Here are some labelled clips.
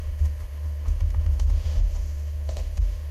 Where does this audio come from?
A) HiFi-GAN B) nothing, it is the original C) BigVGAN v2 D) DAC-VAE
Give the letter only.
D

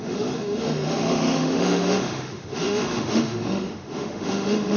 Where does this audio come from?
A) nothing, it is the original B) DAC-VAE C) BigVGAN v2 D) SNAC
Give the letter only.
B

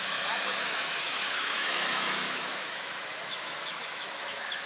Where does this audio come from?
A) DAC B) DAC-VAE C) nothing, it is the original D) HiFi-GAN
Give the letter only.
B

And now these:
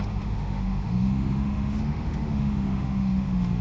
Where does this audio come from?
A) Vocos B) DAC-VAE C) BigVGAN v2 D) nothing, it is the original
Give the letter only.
B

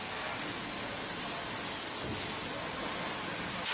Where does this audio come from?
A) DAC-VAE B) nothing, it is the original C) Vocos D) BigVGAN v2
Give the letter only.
B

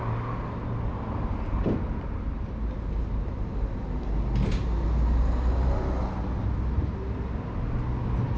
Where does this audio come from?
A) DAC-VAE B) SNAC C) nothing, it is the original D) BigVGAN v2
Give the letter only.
C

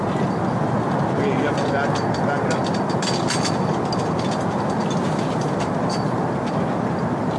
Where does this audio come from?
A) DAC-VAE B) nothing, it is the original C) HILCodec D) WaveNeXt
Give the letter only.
B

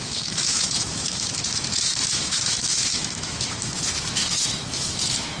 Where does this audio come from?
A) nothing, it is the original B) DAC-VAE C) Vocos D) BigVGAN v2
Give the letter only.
B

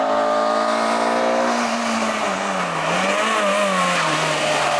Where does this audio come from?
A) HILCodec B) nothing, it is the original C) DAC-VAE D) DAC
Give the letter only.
B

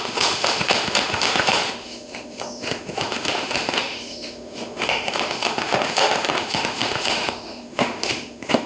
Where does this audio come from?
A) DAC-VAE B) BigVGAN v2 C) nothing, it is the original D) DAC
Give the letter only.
A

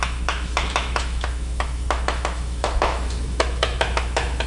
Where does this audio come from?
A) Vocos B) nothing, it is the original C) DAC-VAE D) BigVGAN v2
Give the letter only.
C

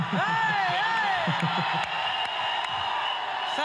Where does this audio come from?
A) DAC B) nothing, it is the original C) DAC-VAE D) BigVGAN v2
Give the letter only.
B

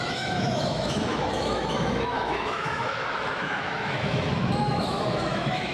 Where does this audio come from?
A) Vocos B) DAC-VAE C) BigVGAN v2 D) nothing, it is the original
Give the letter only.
B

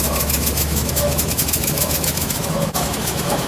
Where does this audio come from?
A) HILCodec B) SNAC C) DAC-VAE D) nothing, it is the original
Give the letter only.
C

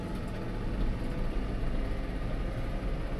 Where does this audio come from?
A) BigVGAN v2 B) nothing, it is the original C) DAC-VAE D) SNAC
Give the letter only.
B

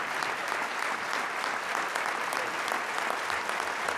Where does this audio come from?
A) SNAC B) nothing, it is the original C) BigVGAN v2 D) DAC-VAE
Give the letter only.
B